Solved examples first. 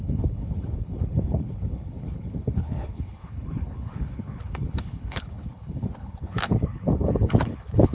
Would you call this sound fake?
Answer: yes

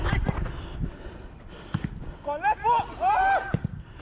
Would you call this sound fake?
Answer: no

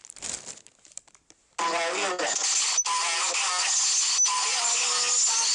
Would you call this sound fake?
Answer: no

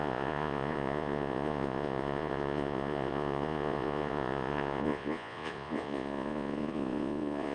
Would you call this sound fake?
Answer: yes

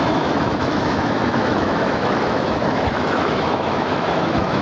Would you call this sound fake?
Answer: yes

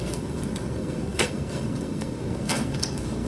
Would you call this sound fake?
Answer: yes